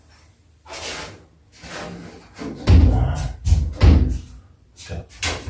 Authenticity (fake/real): real